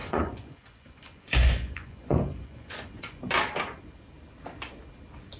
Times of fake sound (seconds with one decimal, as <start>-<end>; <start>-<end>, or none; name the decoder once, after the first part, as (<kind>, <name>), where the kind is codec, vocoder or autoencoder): 0.0-3.2 (vocoder, Vocos)